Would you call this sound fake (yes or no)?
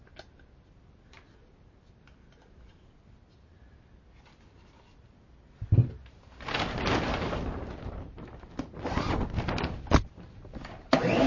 no